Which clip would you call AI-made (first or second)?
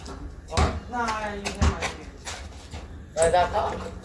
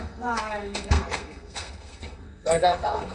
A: second